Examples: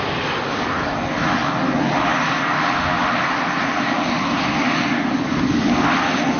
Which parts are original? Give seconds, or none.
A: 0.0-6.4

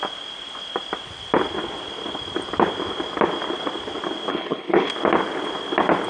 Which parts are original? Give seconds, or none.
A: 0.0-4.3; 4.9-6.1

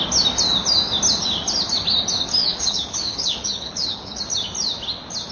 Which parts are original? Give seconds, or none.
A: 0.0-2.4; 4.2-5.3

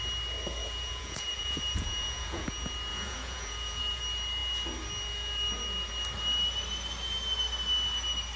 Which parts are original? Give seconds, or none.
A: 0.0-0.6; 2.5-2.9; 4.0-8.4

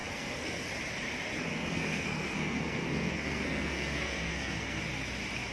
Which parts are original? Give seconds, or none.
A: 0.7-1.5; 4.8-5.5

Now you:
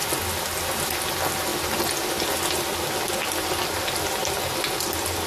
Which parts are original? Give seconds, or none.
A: 0.0-5.3

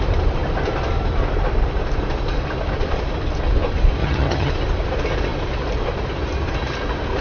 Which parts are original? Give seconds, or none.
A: 0.0-4.0; 4.5-7.2

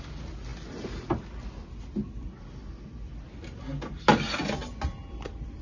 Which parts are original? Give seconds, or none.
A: 0.0-5.6